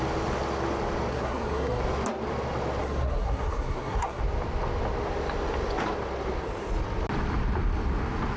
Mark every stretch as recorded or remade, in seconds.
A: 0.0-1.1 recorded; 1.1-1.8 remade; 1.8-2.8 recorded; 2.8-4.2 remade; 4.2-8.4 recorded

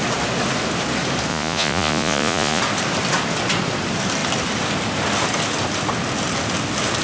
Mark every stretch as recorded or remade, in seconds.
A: 0.0-1.3 recorded; 1.3-2.6 remade; 2.6-7.0 recorded

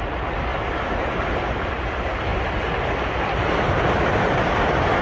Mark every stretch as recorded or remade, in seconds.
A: 0.0-5.0 recorded

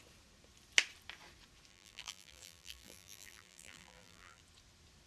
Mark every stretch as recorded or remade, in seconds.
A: 0.0-1.7 recorded; 1.7-4.4 remade; 4.4-5.1 recorded

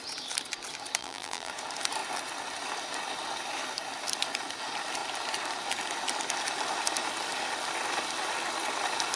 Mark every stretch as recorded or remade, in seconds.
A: 0.0-1.0 recorded; 1.0-1.5 remade; 1.5-9.2 recorded

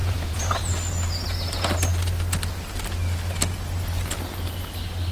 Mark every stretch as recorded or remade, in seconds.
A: 0.0-0.6 remade; 0.6-5.1 recorded